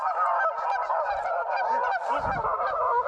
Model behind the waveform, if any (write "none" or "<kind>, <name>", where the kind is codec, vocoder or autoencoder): none